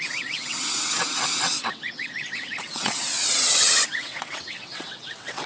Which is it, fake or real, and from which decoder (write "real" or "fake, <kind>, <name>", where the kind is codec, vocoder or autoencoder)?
fake, vocoder, WaveNeXt